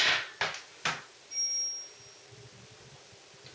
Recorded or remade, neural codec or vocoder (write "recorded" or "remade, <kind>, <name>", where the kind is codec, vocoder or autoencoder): recorded